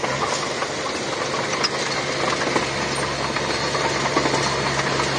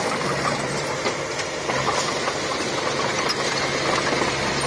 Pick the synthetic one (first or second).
second